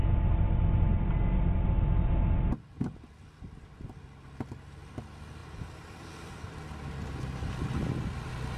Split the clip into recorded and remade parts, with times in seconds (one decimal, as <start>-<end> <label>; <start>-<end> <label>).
0.0-5.4 recorded; 5.4-6.4 remade; 6.4-8.6 recorded